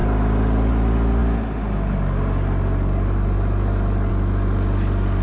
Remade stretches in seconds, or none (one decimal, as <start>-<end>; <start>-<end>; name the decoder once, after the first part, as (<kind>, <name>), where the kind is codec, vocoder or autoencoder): none